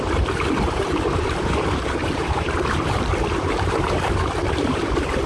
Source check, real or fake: fake